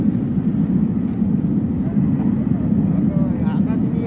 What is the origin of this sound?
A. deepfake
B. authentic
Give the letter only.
B